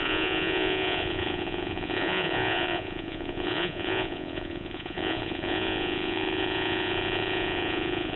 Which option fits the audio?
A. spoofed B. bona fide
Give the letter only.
A